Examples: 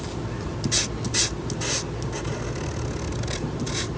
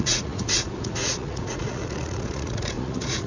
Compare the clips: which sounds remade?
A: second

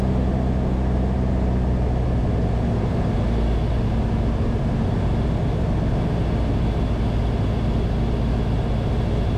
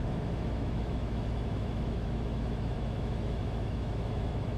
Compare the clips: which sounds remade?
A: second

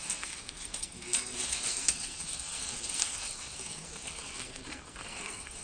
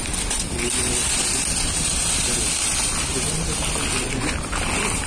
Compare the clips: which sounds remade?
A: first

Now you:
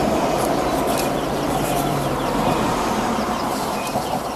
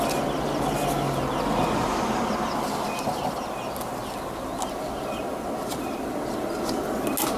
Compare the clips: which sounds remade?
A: first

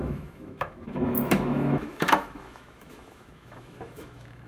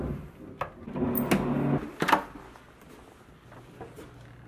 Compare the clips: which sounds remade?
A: first